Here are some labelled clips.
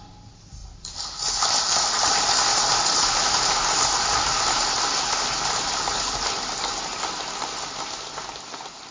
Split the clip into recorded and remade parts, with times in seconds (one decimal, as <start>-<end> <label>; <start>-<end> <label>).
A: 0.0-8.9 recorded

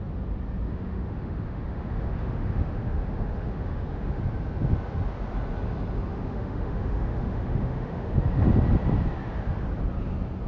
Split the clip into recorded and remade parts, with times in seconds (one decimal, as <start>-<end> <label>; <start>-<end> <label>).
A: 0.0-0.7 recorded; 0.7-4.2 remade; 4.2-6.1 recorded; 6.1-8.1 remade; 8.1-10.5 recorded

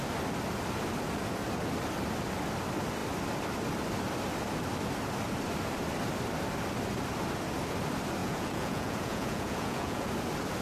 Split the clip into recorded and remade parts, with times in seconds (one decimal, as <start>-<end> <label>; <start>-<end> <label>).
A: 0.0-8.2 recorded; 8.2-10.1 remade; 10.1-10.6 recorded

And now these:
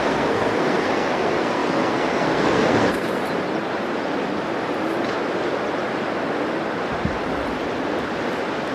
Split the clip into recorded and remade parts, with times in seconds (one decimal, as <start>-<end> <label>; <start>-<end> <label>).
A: 0.0-3.2 remade; 3.2-8.7 recorded

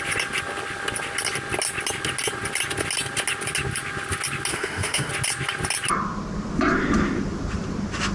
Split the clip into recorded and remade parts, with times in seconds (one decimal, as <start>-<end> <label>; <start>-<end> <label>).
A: 0.0-4.5 recorded; 4.5-5.1 remade; 5.1-8.1 recorded